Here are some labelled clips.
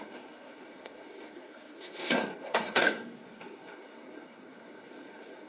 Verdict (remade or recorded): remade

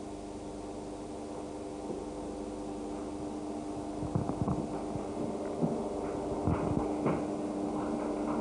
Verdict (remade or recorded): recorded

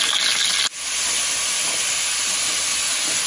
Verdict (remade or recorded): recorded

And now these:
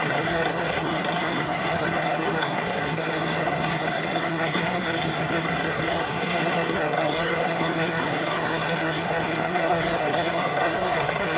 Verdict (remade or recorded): remade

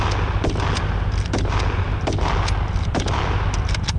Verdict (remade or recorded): recorded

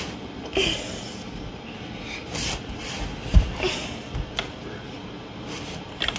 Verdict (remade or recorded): recorded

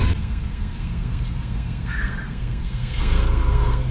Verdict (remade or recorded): remade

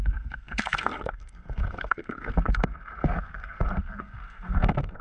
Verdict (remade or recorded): remade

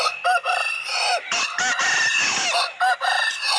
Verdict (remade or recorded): recorded